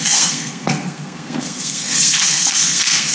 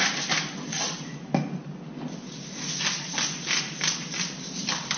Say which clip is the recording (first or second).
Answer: second